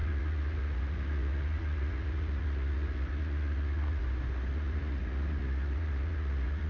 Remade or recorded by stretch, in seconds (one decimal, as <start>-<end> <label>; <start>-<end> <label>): 0.0-4.0 remade; 4.0-4.5 recorded; 4.5-6.7 remade